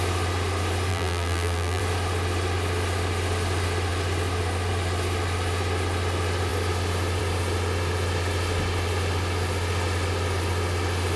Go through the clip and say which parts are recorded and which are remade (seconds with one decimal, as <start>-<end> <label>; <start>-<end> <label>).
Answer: 0.0-0.9 recorded; 0.9-1.8 remade; 1.8-11.2 recorded